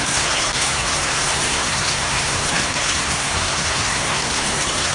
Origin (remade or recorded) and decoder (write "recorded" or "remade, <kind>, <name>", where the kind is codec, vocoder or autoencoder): remade, codec, SNAC